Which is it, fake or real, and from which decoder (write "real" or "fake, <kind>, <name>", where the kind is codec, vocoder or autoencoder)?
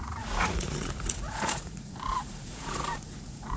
fake, vocoder, Vocos